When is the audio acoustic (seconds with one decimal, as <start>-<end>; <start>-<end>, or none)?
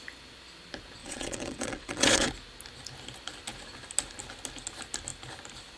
0.0-1.0; 2.3-5.8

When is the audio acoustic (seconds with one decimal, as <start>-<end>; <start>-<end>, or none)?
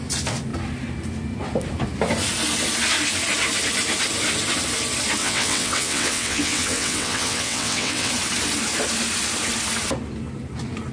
0.0-5.2; 8.1-10.9